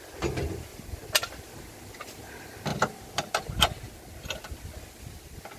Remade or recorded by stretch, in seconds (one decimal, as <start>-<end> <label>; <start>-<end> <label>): 0.0-5.6 recorded